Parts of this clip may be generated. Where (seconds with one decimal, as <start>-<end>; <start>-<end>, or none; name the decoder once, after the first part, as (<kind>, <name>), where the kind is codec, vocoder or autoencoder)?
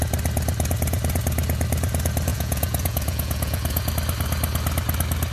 2.3-3.9 (vocoder, Vocos)